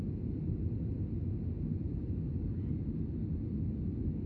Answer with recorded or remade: recorded